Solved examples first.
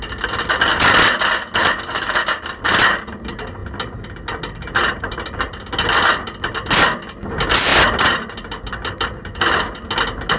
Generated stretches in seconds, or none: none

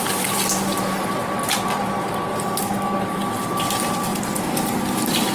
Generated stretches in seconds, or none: none

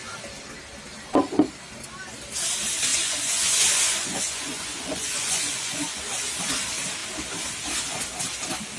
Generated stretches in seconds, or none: 2.9-6.0 (vocoder, Vocos)

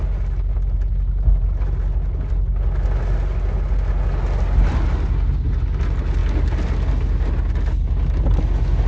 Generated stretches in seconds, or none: none

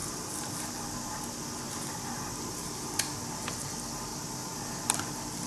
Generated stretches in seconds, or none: none